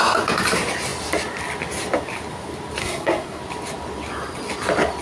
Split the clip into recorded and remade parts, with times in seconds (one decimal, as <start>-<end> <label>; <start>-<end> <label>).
0.0-2.8 recorded; 2.8-3.4 remade; 3.4-5.0 recorded